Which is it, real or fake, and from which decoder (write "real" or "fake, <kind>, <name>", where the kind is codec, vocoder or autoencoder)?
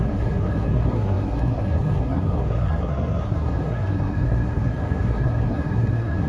fake, codec, SNAC